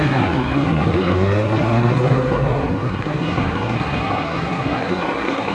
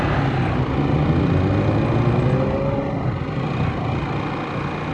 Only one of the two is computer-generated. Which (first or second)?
first